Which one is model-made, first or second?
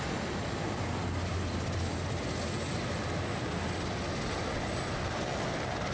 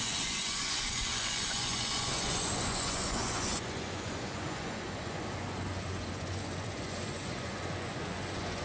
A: second